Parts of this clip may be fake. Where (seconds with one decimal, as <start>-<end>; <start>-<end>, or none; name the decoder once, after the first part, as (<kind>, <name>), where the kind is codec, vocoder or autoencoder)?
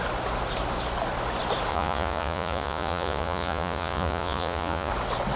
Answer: 1.7-4.9 (vocoder, Vocos)